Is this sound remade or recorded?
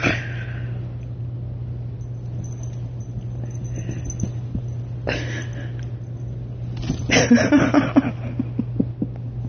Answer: recorded